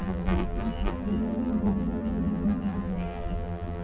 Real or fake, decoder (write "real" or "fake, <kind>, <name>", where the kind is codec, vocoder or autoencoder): fake, vocoder, BigVGAN v2